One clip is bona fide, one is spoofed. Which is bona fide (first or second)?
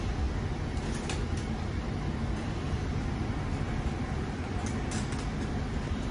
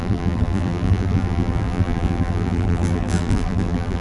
first